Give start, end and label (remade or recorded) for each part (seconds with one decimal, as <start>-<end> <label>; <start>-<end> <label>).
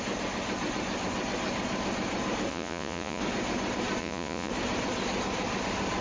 0.0-2.5 recorded; 2.5-3.2 remade; 3.2-4.0 recorded; 4.0-4.5 remade; 4.5-6.0 recorded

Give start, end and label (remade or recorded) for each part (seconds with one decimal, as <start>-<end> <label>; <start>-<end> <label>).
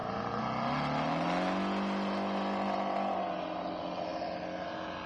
0.0-5.1 recorded